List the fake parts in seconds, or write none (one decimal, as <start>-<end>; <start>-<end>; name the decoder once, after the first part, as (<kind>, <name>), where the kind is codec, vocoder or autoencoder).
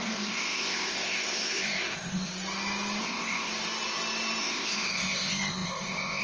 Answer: 0.0-2.3 (codec, ZipCodec); 3.0-3.5; 4.4-6.2